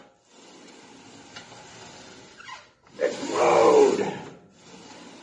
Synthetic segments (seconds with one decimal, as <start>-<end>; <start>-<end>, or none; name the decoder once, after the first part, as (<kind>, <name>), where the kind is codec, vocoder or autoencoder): none